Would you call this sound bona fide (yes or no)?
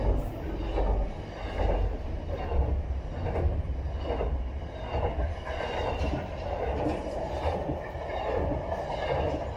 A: yes